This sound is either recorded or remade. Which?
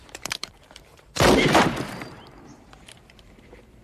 remade